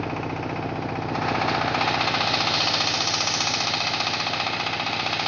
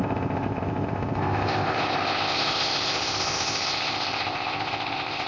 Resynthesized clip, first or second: second